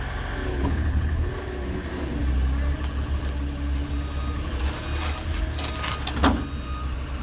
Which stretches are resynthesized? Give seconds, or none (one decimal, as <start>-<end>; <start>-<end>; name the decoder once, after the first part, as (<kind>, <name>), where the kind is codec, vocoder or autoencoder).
0.5-1.3 (codec, HILCodec)